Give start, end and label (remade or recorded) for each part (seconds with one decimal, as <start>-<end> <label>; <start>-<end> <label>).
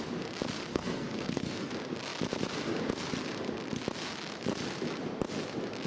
0.0-0.7 recorded; 0.7-1.7 remade; 1.7-5.9 recorded